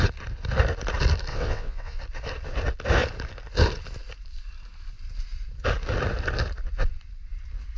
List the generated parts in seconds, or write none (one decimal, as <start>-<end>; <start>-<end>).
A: 1.3-2.0